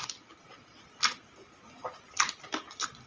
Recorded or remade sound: recorded